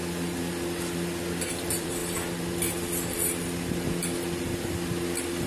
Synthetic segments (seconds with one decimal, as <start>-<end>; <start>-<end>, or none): 1.5-2.0